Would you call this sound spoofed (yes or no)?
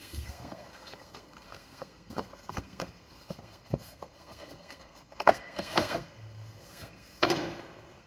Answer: yes